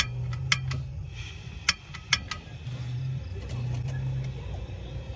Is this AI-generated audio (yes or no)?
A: no